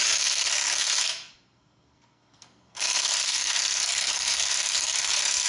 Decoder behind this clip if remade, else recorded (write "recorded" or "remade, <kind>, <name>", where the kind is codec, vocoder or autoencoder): remade, codec, SNAC